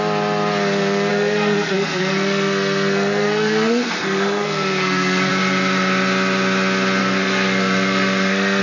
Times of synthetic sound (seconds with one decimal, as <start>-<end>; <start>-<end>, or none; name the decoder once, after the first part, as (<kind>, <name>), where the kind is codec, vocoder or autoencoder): 1.1-5.3 (codec, SNAC); 7.0-8.6